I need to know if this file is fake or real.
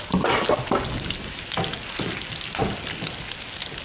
real